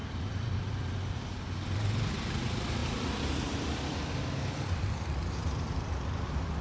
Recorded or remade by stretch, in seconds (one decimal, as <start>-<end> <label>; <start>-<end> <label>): 0.0-2.8 recorded; 2.8-4.1 remade; 4.1-6.6 recorded